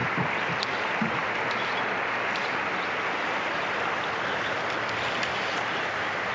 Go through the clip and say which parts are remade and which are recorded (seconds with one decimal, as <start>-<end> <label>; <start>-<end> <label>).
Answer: 0.0-6.3 recorded